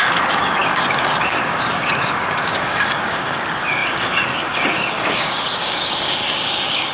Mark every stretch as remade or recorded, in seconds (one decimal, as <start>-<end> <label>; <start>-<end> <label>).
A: 0.0-6.9 remade